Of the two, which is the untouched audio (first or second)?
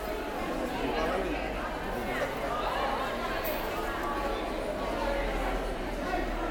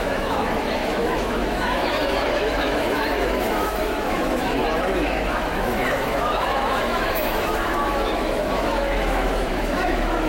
first